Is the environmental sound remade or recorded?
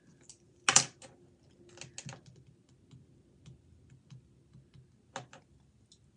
recorded